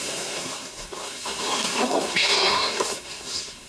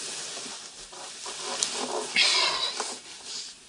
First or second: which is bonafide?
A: second